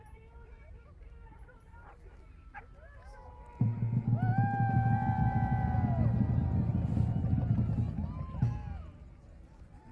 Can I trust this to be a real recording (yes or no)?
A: yes